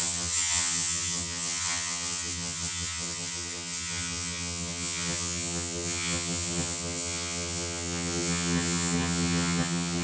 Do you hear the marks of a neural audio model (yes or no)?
yes